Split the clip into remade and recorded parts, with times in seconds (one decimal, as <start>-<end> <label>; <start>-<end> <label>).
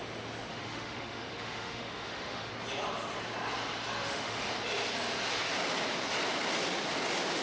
0.0-0.5 recorded; 0.5-2.5 remade; 2.5-4.0 recorded; 4.0-4.5 remade; 4.5-7.4 recorded